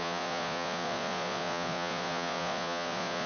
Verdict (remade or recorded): remade